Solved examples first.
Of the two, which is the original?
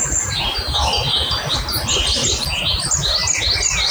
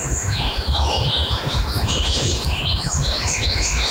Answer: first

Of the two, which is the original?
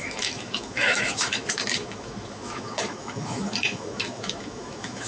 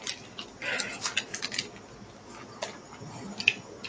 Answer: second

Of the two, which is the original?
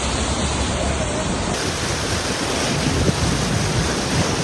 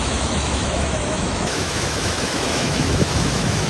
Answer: first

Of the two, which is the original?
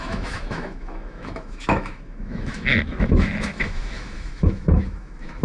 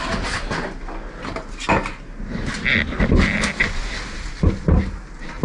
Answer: second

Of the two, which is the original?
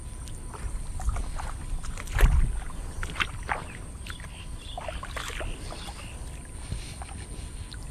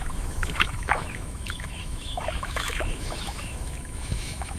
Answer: first